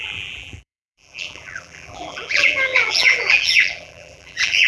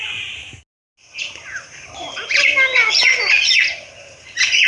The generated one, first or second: first